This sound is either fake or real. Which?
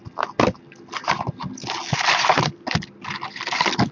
real